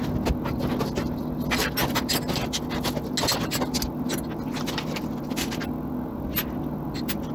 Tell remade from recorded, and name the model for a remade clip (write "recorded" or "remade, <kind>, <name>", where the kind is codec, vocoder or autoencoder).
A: recorded